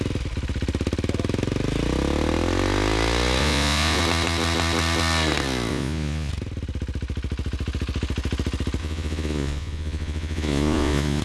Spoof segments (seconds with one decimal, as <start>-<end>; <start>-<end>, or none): 3.4-4.0; 5.7-6.3; 8.8-11.2